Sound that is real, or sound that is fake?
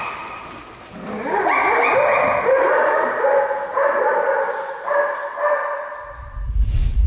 real